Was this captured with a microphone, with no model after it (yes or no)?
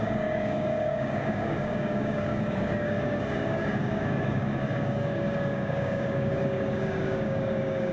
no